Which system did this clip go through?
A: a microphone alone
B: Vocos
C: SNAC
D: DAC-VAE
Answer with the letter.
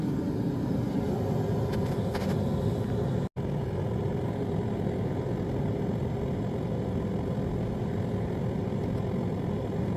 A